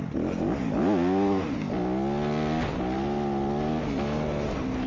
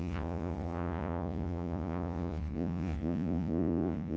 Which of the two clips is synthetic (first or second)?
second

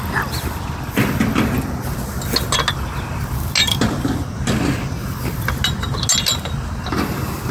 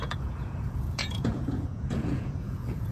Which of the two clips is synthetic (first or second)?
second